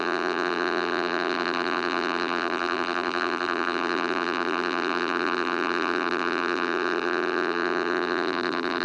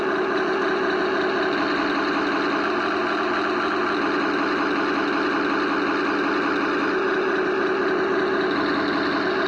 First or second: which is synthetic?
first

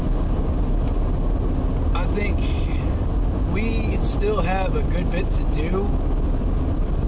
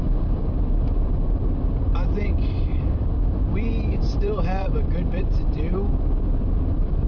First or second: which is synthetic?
second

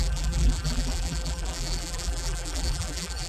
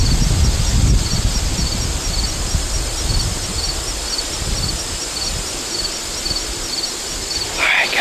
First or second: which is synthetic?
first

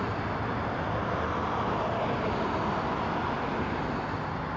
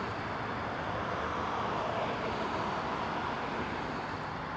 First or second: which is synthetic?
second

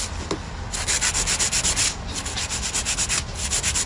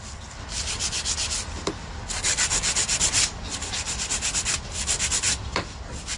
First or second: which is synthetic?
second